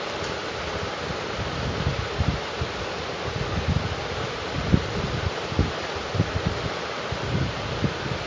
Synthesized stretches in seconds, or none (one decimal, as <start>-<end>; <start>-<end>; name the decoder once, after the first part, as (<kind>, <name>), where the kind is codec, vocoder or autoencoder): none